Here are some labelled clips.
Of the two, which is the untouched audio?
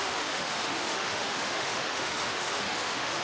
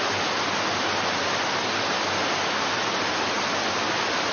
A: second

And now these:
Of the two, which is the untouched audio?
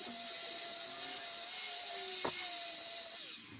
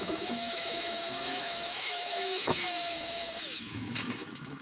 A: first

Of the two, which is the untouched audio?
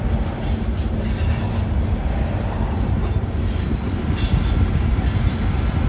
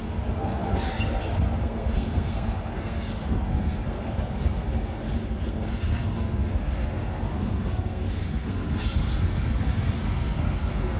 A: first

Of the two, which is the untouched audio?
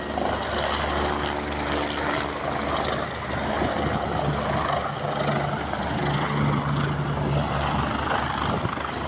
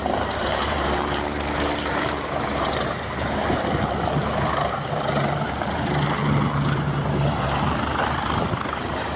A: first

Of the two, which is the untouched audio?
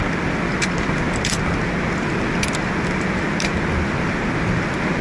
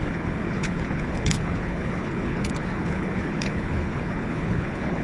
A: first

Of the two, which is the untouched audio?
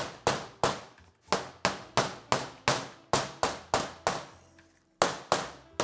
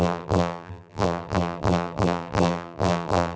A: first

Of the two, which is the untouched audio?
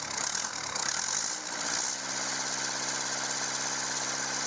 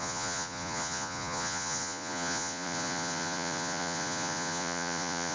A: first